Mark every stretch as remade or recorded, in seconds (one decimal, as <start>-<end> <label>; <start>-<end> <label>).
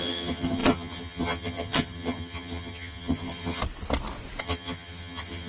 0.0-3.6 remade; 3.6-4.4 recorded; 4.4-5.5 remade